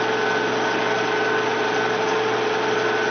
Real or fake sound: real